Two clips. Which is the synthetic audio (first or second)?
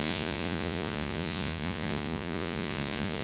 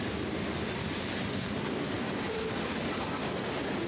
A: first